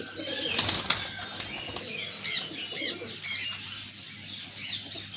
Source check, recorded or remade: recorded